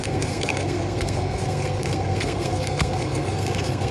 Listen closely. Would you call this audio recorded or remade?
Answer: remade